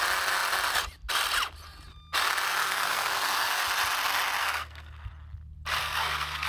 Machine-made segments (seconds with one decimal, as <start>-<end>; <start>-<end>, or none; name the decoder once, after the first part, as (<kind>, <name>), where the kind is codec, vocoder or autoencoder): 2.6-3.6 (codec, SNAC); 4.4-5.1; 5.8-6.5